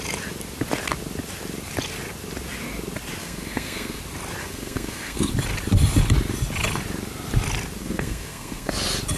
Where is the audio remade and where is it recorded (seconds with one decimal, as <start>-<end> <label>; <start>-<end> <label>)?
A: 0.0-3.2 recorded; 3.2-4.0 remade; 4.0-4.4 recorded; 4.4-5.3 remade; 5.3-7.8 recorded; 7.8-8.7 remade; 8.7-9.2 recorded